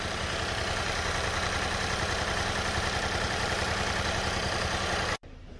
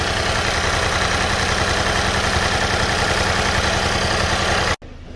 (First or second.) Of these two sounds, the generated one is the first